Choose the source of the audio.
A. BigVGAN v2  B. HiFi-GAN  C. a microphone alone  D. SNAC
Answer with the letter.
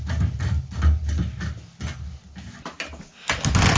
C